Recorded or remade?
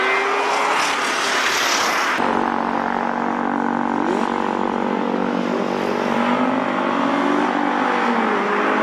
recorded